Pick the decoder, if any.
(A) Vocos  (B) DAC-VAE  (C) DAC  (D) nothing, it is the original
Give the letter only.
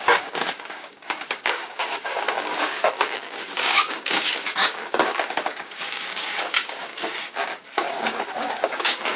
C